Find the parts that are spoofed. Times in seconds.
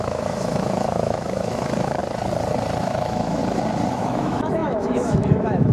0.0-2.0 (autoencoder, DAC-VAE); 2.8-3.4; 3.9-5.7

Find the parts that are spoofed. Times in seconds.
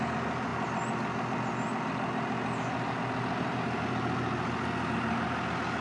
none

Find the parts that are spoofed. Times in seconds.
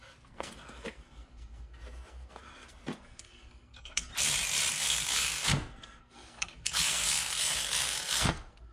0.0-4.1 (codec, SNAC); 4.7-8.7